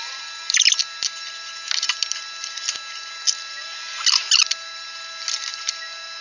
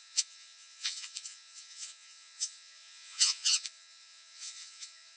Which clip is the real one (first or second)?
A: first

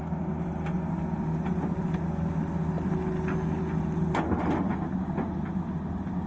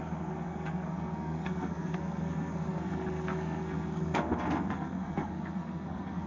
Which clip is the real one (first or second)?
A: first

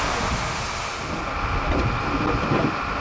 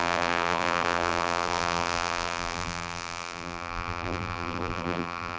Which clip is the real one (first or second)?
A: first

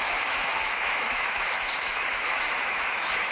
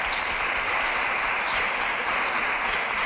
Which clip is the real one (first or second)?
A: second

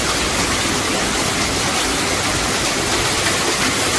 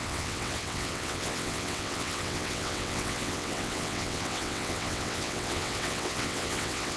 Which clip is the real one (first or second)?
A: first